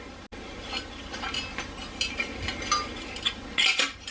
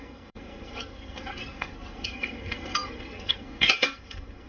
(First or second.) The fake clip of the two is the second